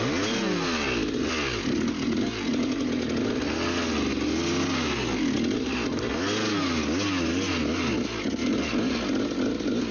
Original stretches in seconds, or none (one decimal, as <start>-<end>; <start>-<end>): 0.0-9.9